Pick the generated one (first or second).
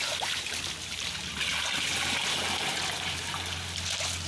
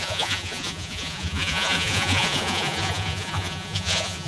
second